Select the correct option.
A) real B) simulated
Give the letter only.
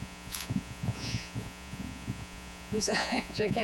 B